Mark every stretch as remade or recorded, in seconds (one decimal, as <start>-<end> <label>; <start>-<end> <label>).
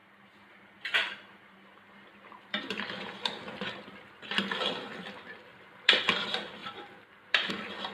0.0-2.6 remade; 2.6-5.5 recorded; 5.5-6.0 remade; 6.0-6.6 recorded; 6.6-7.5 remade; 7.5-7.9 recorded